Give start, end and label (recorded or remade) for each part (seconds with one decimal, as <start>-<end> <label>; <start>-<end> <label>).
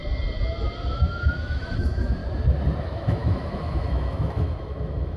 0.0-1.0 recorded; 1.0-2.2 remade; 2.2-2.8 recorded; 2.8-5.2 remade